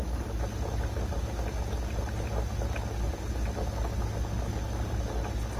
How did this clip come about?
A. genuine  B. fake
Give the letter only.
A